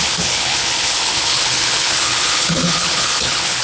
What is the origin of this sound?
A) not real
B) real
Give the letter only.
A